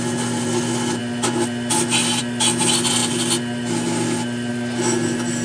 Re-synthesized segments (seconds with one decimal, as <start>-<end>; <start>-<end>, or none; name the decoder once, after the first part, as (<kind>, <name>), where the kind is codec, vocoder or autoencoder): none